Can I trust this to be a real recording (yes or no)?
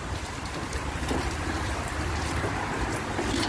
no